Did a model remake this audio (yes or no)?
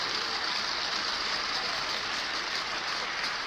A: no